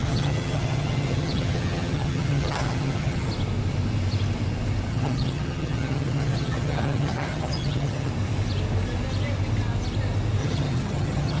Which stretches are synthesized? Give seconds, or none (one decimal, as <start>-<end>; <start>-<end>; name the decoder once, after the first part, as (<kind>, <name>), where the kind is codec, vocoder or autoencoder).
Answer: 0.0-3.3 (vocoder, HiFi-GAN); 4.9-8.1; 10.4-11.4